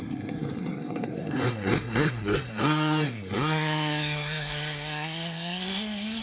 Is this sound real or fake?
fake